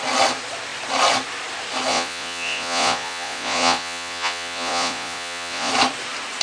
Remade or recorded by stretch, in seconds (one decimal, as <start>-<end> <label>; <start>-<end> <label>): 0.0-1.9 recorded; 1.9-5.7 remade; 5.7-6.4 recorded